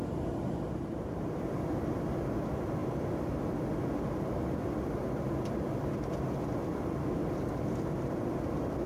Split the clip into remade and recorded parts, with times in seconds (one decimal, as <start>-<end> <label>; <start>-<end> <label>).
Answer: 0.0-8.9 recorded